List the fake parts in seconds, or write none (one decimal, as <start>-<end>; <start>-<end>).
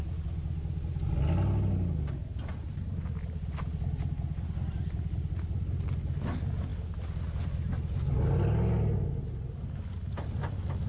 none